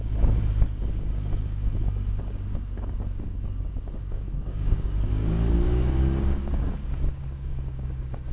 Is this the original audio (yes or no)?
no